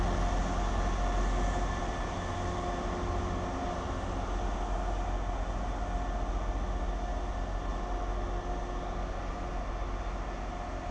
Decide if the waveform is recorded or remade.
recorded